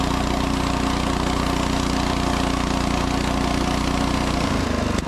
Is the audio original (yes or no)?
yes